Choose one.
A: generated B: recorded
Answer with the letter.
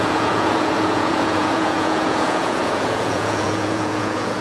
A